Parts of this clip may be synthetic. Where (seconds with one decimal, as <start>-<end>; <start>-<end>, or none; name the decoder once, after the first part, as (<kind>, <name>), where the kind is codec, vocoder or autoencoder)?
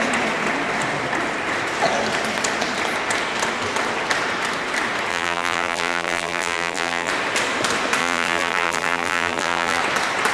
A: 5.1-7.1 (vocoder, BigVGAN v2); 8.0-9.8